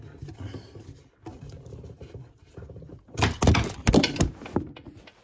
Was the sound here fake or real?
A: real